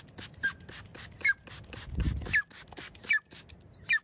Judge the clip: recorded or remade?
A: recorded